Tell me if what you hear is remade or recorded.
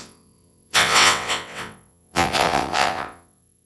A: remade